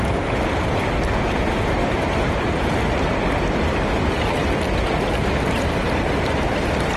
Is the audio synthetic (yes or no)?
no